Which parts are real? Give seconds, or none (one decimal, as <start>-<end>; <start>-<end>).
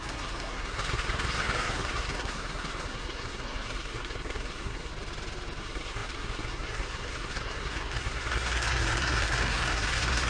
4.9-5.6